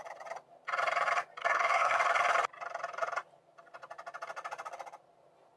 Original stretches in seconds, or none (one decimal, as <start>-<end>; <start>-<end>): 0.0-1.4; 2.0-5.6